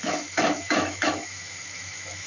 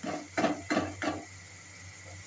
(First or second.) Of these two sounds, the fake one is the first